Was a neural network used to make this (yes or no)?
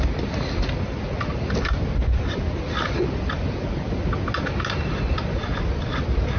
no